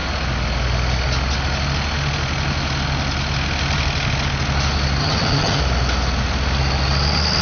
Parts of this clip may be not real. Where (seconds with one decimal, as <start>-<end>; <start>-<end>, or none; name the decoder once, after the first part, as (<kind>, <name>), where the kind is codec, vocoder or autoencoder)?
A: 5.0-5.6 (vocoder, HiFi-GAN)